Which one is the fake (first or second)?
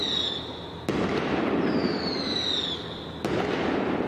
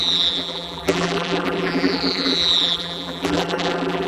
second